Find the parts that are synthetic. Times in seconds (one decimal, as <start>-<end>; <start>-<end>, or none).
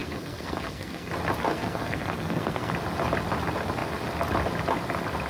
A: 0.0-1.1; 1.5-2.7